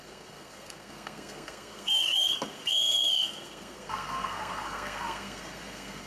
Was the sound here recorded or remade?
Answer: remade